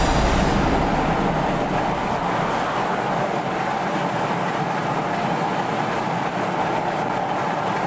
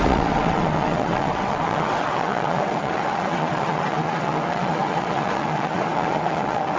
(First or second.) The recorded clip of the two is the first